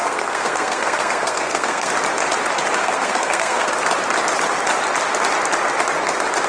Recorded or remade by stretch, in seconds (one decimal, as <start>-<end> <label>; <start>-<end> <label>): 0.0-1.9 remade; 1.9-2.8 recorded; 2.8-3.7 remade; 3.7-6.5 recorded